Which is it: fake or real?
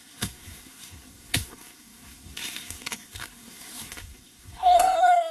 fake